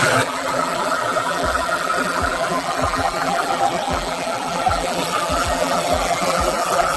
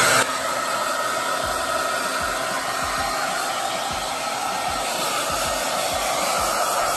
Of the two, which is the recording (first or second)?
second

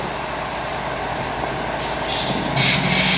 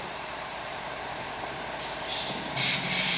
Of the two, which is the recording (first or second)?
first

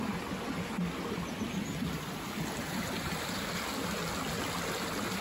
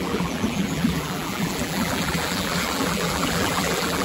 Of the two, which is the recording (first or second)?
first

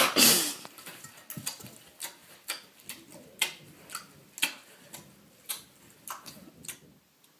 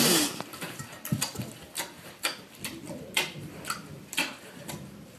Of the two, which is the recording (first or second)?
first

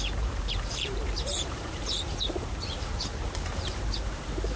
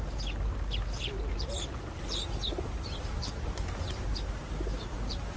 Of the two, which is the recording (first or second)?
second